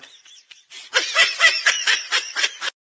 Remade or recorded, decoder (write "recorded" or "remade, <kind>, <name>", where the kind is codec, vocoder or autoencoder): recorded